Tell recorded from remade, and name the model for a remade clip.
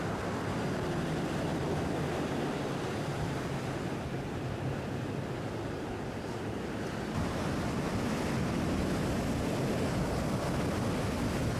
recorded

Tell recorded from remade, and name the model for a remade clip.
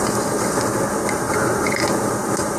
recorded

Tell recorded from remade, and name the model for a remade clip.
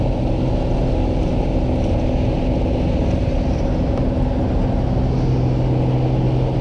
recorded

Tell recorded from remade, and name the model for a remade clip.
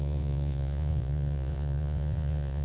remade, vocoder, Vocos